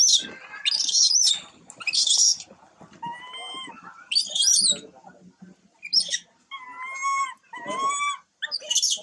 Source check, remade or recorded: recorded